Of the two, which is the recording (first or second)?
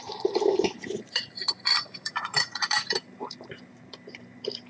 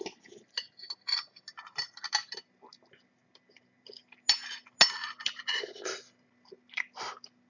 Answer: second